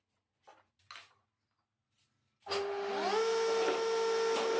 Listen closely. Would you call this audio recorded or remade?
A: recorded